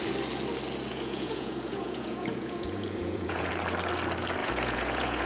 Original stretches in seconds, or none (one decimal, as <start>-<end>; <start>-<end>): 0.0-0.9; 3.5-4.4

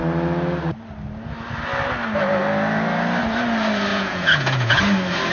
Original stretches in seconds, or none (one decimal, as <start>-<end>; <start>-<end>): 0.0-3.9; 4.8-5.3

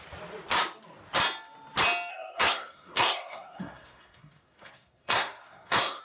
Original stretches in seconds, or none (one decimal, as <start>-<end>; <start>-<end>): 0.0-2.1

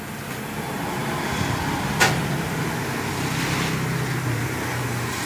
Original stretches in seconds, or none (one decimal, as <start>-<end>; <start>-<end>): 0.0-1.0; 2.8-5.3